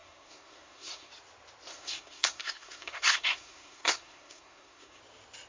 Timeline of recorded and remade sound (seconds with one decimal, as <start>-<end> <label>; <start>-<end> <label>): 0.0-1.1 remade; 1.1-1.7 recorded; 1.7-5.0 remade; 5.0-5.5 recorded